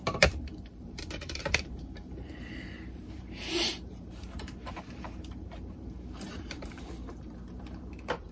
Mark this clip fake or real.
fake